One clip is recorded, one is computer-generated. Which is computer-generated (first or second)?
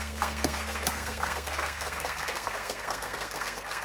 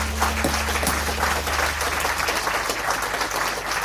first